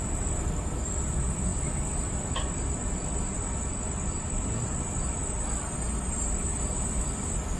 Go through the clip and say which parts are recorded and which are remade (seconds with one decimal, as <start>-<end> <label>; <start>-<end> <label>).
0.0-7.6 recorded